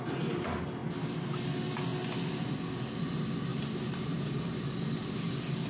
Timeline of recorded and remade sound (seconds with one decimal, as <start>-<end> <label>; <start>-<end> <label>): 0.0-5.7 recorded